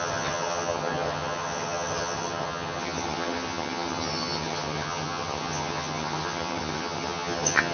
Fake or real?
fake